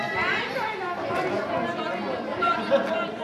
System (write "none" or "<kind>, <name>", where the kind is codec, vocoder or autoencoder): none